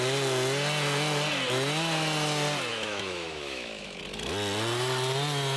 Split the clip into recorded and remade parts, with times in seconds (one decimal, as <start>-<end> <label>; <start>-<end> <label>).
0.0-2.7 recorded; 2.7-4.0 remade; 4.0-5.6 recorded